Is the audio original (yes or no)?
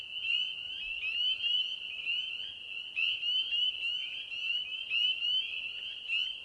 yes